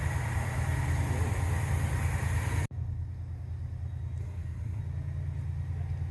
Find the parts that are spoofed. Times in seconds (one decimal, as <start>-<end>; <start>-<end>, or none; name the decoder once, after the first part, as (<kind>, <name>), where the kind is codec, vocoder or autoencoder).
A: 4.2-4.8 (codec, SNAC)